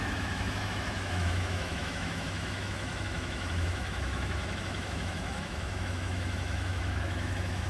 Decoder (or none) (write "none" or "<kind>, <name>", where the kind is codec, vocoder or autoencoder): autoencoder, DAC-VAE